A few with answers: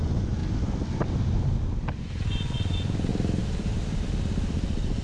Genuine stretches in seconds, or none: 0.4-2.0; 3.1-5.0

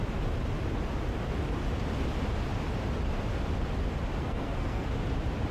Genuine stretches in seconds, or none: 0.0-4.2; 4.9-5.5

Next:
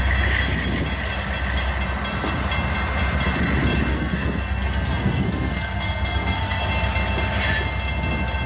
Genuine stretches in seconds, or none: 0.0-3.9; 6.6-8.5

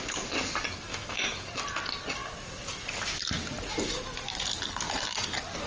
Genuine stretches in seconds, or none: 0.0-0.9; 1.5-5.7

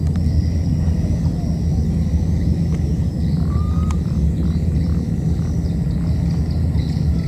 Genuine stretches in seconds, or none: 0.7-7.3

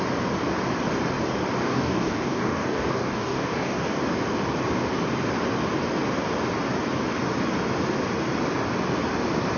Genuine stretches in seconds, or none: 0.0-1.6; 4.0-9.6